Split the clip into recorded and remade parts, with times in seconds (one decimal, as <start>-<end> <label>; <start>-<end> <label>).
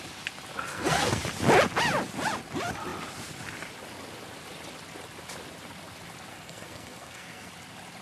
0.0-0.7 recorded; 0.7-1.2 remade; 1.2-6.3 recorded; 6.3-7.5 remade; 7.5-8.0 recorded